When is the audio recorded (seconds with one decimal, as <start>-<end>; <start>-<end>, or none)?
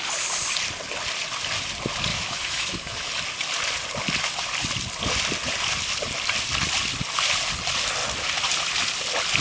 0.0-2.1; 3.1-9.4